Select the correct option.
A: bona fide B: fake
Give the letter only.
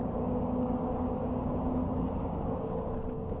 B